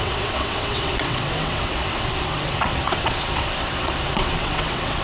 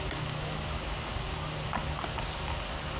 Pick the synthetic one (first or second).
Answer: first